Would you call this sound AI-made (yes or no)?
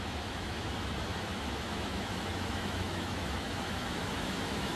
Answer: yes